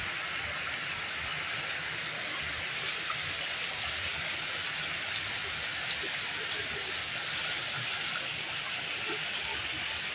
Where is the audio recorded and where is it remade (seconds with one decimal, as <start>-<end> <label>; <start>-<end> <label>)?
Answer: 0.0-10.1 recorded